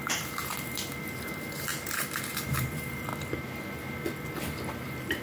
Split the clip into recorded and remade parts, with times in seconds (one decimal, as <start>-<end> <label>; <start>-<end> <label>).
0.0-3.1 remade; 3.1-4.7 recorded; 4.7-5.2 remade